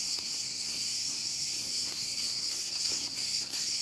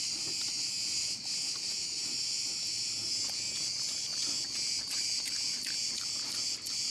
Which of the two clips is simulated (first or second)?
first